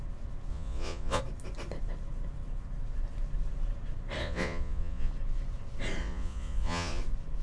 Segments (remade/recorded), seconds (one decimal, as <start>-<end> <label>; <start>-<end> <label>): 0.0-0.5 recorded; 0.5-1.2 remade; 1.2-4.2 recorded; 4.2-5.1 remade; 5.1-6.0 recorded; 6.0-7.0 remade; 7.0-7.4 recorded